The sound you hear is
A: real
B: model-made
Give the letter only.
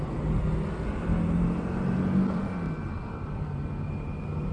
A